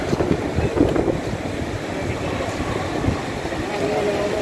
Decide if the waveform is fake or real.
real